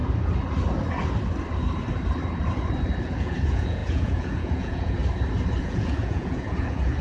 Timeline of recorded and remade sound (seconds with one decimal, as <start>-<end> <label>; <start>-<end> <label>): 0.0-3.0 recorded; 3.0-5.0 remade; 5.0-5.6 recorded; 5.6-7.0 remade